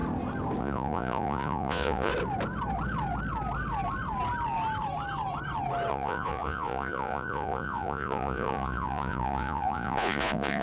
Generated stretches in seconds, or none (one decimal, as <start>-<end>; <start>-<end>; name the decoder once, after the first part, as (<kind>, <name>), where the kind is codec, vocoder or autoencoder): 0.6-2.1 (vocoder, Vocos); 5.9-10.6